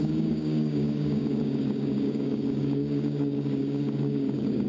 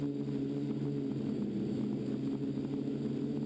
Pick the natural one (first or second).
second